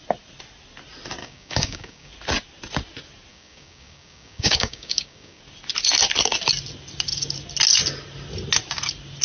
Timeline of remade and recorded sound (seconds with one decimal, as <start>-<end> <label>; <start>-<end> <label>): 0.0-1.2 recorded; 1.2-2.1 remade; 2.1-3.3 recorded; 3.3-5.4 remade; 5.4-9.2 recorded